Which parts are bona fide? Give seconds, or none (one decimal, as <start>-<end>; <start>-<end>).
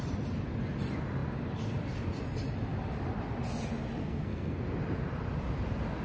0.0-4.0; 4.6-6.0